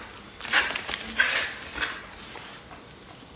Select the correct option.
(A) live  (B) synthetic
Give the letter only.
A